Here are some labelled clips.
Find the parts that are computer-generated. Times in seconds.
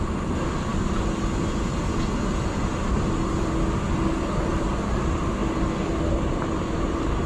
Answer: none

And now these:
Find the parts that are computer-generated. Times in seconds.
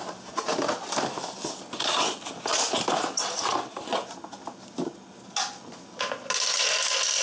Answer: 0.0-0.5 (vocoder, BigVGAN v2)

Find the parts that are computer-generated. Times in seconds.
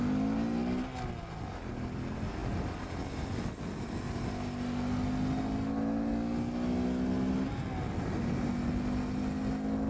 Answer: none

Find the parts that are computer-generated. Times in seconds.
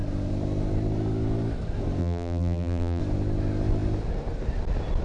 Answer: 2.0-3.0 (vocoder, BigVGAN v2)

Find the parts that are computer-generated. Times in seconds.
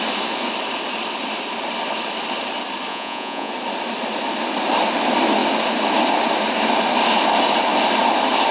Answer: 2.9-3.5 (vocoder, Vocos)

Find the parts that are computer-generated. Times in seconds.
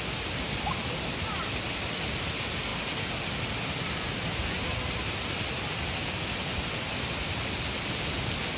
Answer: none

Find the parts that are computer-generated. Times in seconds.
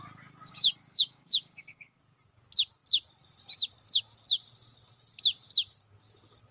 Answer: 0.5-2.0 (codec, DAC)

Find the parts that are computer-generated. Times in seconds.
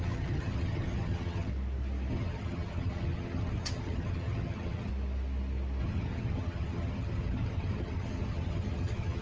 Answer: 0.0-1.5 (vocoder, HiFi-GAN); 2.1-4.9; 5.8-9.2